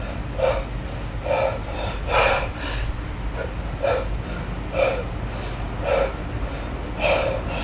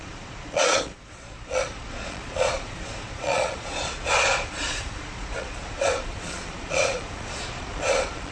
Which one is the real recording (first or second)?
first